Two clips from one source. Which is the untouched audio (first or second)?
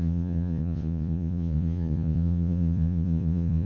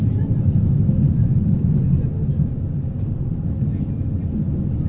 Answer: second